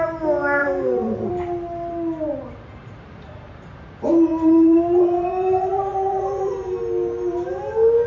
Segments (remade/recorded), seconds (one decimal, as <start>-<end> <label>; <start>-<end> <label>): 0.0-0.6 recorded; 0.6-1.3 remade; 1.3-4.3 recorded; 4.3-6.7 remade; 6.7-8.1 recorded